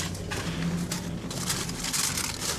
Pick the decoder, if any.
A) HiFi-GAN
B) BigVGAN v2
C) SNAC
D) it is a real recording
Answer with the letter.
D